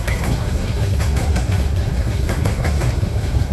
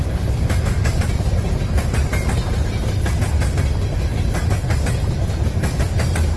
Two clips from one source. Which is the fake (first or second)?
first